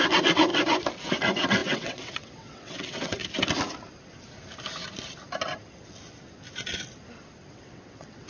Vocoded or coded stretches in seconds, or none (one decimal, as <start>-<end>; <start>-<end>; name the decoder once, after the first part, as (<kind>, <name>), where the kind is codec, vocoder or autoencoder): 0.0-0.5 (vocoder, WaveNeXt); 1.0-3.2; 7.5-8.3